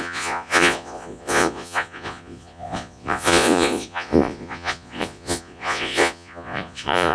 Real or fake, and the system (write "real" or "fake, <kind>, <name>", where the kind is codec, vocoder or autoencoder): fake, vocoder, Vocos